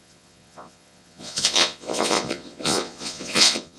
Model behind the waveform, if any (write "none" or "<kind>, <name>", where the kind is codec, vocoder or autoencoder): vocoder, Vocos